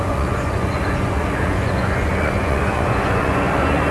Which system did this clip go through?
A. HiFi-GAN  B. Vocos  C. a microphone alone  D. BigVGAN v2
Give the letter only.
B